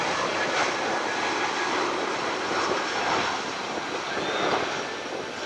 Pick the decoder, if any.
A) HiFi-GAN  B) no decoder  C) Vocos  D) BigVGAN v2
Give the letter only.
B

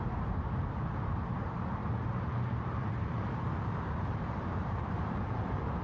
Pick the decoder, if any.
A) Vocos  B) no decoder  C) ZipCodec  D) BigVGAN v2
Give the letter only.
D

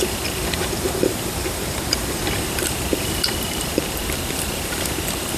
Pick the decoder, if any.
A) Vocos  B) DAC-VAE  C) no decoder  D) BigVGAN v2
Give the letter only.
D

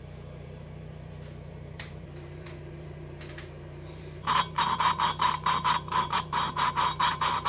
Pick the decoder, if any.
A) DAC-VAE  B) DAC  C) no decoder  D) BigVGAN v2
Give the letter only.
D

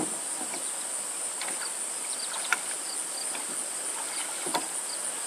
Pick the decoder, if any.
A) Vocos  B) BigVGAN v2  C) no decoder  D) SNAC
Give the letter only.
C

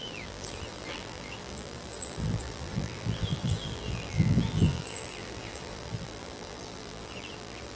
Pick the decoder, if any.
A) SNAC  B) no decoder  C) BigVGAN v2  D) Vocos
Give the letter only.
C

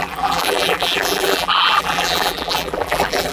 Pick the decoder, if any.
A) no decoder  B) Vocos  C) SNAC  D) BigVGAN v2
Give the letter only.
D